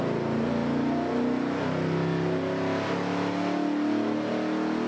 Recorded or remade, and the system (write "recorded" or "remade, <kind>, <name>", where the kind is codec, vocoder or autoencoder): recorded